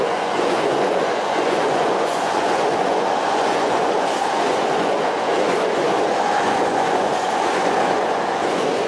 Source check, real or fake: fake